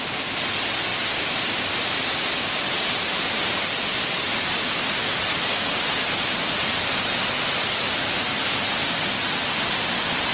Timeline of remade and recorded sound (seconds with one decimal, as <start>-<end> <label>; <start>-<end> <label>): 0.0-10.3 recorded